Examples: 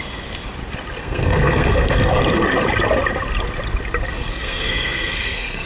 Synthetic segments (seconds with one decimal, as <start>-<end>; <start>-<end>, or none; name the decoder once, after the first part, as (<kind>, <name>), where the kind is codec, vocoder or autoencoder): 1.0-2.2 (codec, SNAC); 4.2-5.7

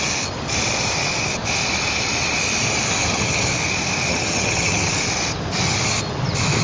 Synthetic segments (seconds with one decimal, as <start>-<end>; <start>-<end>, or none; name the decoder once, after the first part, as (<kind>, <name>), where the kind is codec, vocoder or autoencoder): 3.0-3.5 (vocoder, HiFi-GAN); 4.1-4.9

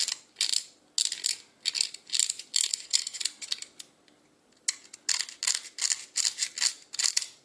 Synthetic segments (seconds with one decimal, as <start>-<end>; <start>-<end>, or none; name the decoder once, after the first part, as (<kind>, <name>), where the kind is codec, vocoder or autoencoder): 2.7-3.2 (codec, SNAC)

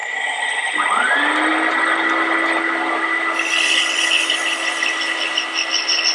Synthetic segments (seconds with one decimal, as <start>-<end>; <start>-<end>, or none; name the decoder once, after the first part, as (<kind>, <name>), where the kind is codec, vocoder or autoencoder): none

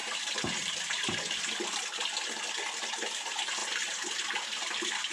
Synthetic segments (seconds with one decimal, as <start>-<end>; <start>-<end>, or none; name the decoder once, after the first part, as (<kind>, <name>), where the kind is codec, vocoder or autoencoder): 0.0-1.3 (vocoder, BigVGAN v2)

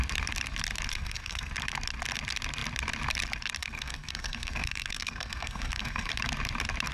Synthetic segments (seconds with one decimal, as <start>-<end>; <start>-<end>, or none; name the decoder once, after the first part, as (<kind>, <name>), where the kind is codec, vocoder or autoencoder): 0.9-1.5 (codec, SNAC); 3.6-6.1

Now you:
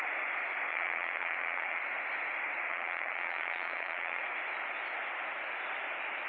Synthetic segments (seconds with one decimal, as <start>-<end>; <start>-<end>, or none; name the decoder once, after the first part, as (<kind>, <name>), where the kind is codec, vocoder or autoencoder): 0.7-1.8 (vocoder, Vocos); 2.7-4.2

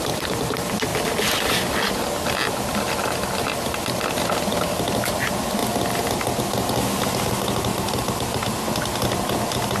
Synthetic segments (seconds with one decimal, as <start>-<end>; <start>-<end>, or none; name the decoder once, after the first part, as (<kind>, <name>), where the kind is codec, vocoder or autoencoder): 7.7-8.6 (vocoder, BigVGAN v2)